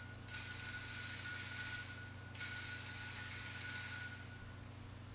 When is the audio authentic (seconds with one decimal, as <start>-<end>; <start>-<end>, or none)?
0.0-5.1